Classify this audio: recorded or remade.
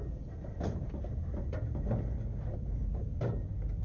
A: recorded